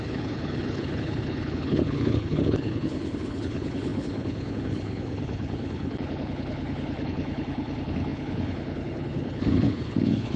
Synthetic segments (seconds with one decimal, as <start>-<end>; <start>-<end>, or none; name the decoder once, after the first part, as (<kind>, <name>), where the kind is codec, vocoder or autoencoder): 0.0-10.4 (codec, HILCodec)